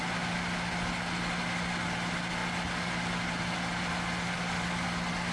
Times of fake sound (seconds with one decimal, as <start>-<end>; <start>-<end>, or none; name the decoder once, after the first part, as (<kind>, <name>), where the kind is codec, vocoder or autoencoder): none